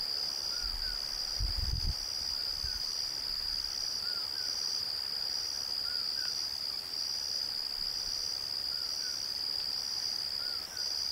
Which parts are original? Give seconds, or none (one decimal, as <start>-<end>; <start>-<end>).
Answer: 0.0-11.1